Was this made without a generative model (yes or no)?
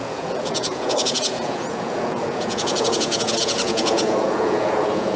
no